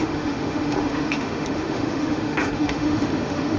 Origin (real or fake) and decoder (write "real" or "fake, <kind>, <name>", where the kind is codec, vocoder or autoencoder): fake, autoencoder, DAC-VAE